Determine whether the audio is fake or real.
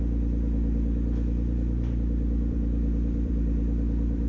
fake